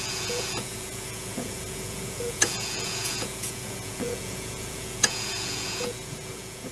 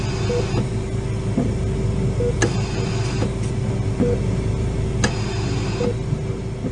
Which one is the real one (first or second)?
second